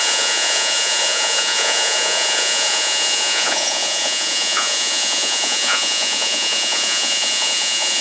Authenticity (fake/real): fake